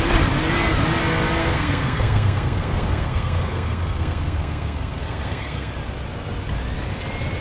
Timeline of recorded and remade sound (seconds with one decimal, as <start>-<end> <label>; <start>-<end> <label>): 0.0-1.4 recorded; 1.4-5.7 remade; 5.7-7.4 recorded